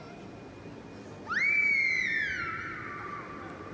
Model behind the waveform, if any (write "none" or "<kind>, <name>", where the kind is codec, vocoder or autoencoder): none